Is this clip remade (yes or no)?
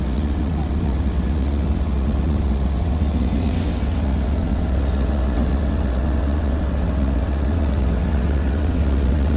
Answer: yes